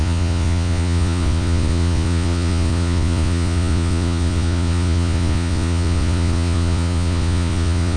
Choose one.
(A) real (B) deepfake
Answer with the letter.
B